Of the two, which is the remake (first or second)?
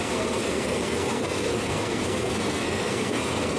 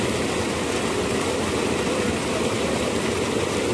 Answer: first